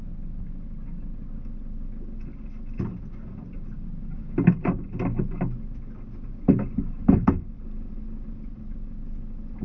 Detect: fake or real real